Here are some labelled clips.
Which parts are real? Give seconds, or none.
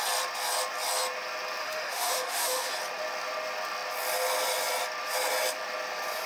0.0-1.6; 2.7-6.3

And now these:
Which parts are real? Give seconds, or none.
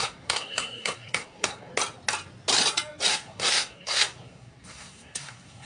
1.7-3.1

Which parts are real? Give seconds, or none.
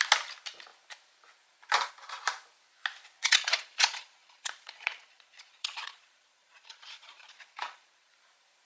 0.0-3.2; 8.1-8.7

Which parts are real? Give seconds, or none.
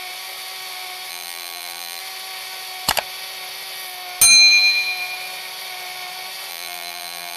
0.0-1.1; 2.0-6.5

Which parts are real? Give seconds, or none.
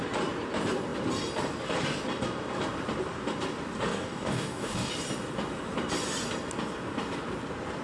0.0-3.9; 4.9-7.8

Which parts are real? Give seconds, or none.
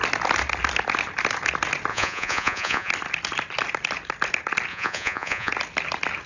0.0-1.9; 2.9-4.7; 5.5-6.3